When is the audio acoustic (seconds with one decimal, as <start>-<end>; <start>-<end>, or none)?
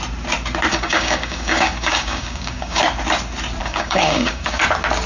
0.0-0.7; 2.8-3.6; 4.6-5.1